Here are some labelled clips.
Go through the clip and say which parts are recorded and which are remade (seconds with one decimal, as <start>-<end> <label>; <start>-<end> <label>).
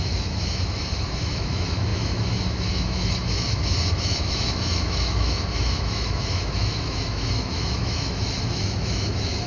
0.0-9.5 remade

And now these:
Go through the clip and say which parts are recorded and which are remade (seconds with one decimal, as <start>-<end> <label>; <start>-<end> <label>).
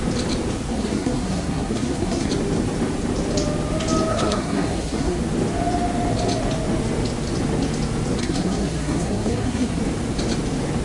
0.0-0.7 recorded; 0.7-2.3 remade; 2.3-4.1 recorded; 4.1-5.2 remade; 5.2-8.2 recorded; 8.2-9.8 remade; 9.8-10.8 recorded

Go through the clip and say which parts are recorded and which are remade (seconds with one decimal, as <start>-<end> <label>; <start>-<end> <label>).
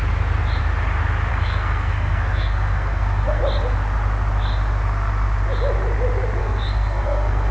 0.0-1.3 recorded; 1.3-3.4 remade; 3.4-6.4 recorded; 6.4-7.5 remade